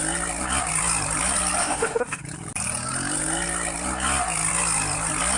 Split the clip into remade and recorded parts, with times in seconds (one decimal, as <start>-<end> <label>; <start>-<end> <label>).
0.0-1.6 recorded; 1.6-2.2 remade; 2.2-5.4 recorded

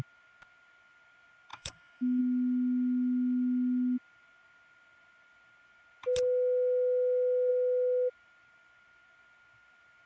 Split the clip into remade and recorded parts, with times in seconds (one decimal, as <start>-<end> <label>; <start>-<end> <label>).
0.0-1.5 recorded; 1.5-2.2 remade; 2.2-10.1 recorded

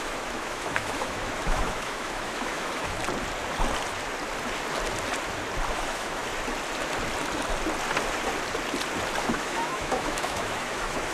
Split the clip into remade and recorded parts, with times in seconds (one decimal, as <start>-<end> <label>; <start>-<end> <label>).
0.0-3.0 remade; 3.0-5.7 recorded; 5.7-6.2 remade; 6.2-9.2 recorded; 9.2-11.1 remade

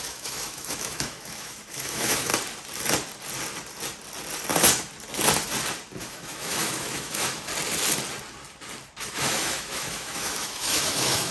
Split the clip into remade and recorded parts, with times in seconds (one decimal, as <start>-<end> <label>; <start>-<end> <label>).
0.0-2.3 remade; 2.3-6.0 recorded; 6.0-7.5 remade; 7.5-9.0 recorded; 9.0-11.3 remade

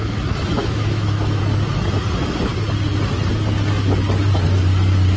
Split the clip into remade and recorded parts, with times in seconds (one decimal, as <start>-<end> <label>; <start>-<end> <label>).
0.0-0.6 recorded; 0.6-1.4 remade; 1.4-5.2 recorded